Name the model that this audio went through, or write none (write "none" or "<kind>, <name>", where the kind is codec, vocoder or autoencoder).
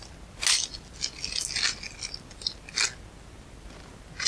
none